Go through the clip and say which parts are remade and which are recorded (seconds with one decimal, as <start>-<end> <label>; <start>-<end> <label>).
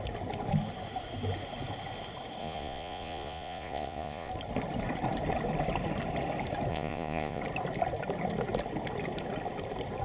0.0-2.4 recorded; 2.4-4.3 remade; 4.3-6.7 recorded; 6.7-7.4 remade; 7.4-10.0 recorded